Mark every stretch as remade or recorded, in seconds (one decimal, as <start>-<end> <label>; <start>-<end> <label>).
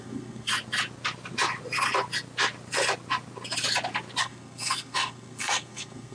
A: 0.0-0.5 remade; 0.5-4.2 recorded; 4.2-6.1 remade